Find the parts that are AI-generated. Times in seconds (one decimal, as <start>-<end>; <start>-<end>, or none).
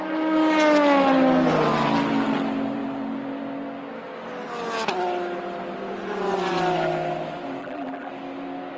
7.6-8.1